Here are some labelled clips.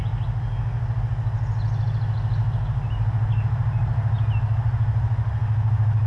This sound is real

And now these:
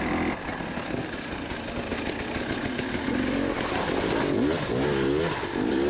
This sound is real